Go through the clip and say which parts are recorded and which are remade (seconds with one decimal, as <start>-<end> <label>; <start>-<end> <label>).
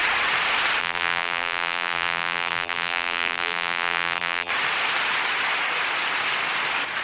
0.0-0.8 recorded; 0.8-4.5 remade; 4.5-7.0 recorded